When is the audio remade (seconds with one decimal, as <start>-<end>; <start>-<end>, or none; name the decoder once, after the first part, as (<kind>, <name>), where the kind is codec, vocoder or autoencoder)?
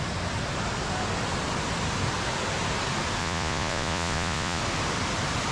3.2-4.6 (vocoder, Vocos)